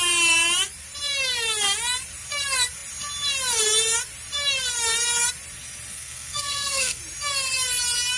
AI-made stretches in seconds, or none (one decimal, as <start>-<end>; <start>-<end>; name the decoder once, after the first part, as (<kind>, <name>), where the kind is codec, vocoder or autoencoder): 5.9-7.0 (codec, SNAC)